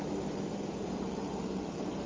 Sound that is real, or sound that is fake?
real